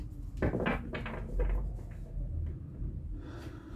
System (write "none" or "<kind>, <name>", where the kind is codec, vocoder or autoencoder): none